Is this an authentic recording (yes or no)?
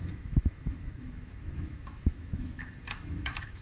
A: no